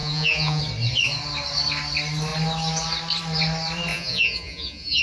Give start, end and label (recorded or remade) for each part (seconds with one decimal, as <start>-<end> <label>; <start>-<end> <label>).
0.0-0.6 remade; 0.6-3.9 recorded; 3.9-5.0 remade